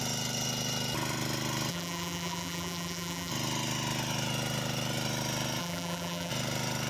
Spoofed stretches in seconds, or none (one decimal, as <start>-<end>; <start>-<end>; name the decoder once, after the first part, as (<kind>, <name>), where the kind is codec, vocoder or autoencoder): 1.7-3.3 (vocoder, BigVGAN v2); 5.6-6.3